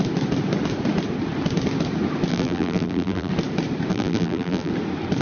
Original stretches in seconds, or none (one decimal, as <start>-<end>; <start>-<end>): 0.0-2.3; 3.3-3.9; 4.7-5.2